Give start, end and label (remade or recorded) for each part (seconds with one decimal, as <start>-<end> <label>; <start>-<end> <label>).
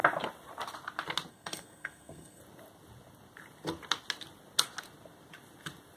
0.0-1.3 recorded; 1.3-2.4 remade; 2.4-6.0 recorded